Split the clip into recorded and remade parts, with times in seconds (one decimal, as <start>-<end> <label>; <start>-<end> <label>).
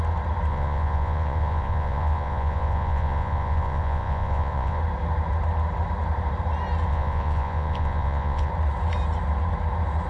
0.0-0.5 recorded; 0.5-4.8 remade; 4.8-6.9 recorded; 6.9-8.5 remade; 8.5-10.1 recorded